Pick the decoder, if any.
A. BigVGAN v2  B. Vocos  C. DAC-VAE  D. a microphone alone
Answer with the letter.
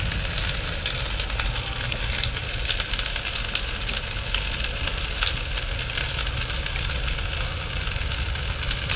D